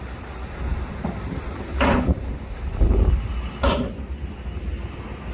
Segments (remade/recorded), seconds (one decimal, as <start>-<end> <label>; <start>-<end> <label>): 0.0-0.7 recorded; 0.7-3.9 remade; 3.9-5.3 recorded